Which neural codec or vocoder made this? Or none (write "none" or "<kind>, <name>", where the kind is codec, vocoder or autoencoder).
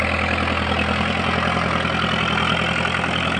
none